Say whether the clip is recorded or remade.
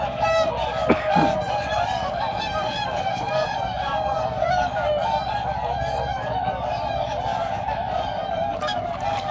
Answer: remade